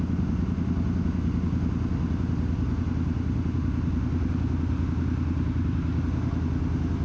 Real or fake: real